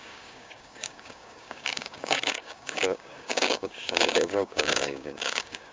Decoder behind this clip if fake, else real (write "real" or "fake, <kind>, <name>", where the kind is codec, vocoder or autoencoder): fake, codec, DAC